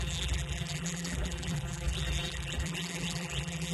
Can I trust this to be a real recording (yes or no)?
no